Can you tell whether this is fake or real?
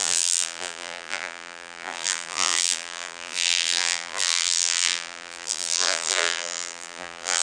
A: fake